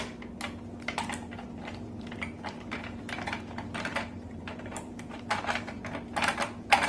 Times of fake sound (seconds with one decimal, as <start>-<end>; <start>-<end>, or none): 3.9-5.6